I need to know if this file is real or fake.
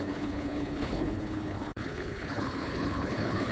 fake